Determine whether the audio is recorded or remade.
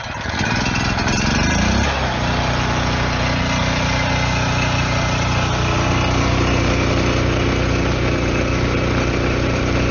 recorded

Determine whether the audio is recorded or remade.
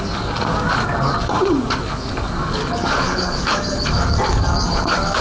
remade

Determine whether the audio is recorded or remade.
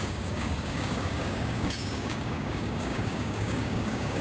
remade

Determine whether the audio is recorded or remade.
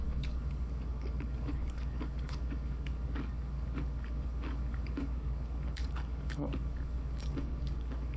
remade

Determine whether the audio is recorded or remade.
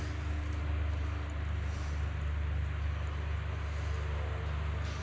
recorded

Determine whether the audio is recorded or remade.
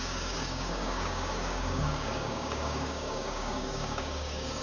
remade